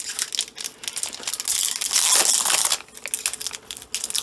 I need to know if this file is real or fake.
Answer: real